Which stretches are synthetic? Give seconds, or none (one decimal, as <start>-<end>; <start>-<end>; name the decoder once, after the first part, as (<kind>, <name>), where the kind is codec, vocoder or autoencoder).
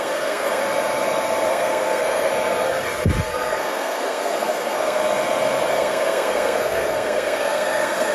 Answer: 0.0-0.6 (codec, SNAC); 1.5-2.3; 3.3-5.0; 5.7-8.1